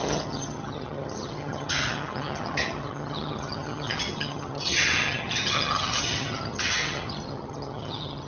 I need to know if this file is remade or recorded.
remade